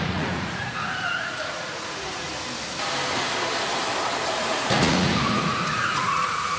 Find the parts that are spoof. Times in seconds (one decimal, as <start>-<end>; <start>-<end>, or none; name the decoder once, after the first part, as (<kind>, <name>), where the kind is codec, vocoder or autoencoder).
0.0-2.3 (vocoder, Vocos); 4.4-6.6